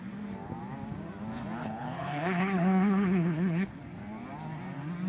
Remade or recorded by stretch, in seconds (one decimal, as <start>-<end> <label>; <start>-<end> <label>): 0.0-1.6 recorded; 1.6-3.7 remade; 3.7-5.1 recorded